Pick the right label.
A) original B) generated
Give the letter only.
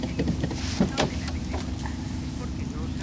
A